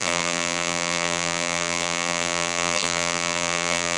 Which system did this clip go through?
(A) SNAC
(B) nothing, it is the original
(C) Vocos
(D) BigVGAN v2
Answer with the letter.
D